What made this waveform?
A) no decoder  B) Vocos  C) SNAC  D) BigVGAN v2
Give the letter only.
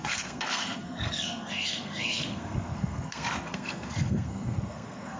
C